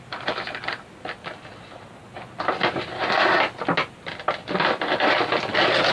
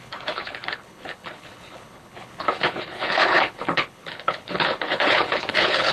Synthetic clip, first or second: second